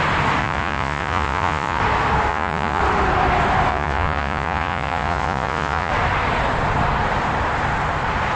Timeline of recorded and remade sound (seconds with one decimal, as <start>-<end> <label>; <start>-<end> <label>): 0.0-0.4 recorded; 0.4-1.8 remade; 1.8-2.3 recorded; 2.3-2.8 remade; 2.8-3.7 recorded; 3.7-5.9 remade; 5.9-8.4 recorded